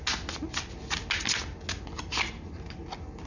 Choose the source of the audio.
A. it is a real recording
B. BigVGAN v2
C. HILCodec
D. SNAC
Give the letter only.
A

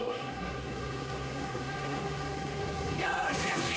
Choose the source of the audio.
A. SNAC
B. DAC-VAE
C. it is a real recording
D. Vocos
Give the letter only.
A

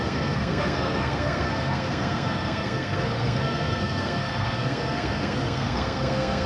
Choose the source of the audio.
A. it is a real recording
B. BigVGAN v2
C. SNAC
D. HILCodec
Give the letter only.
C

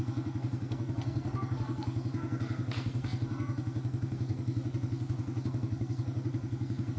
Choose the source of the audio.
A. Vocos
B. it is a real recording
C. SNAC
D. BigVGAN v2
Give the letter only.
C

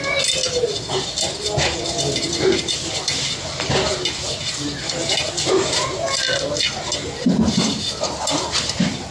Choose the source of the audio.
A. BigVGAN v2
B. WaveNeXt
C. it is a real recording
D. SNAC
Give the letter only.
C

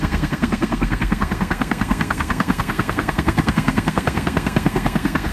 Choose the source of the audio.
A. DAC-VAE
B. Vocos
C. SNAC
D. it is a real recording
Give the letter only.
C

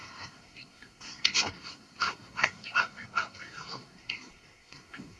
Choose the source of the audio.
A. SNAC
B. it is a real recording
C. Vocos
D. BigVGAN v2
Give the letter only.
A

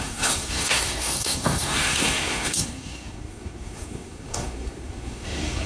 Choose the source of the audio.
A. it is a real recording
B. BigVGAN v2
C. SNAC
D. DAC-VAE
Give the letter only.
C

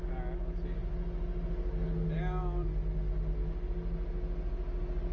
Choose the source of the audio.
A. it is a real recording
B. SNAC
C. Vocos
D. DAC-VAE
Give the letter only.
A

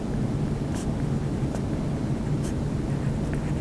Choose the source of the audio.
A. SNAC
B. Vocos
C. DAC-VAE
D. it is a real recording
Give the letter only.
D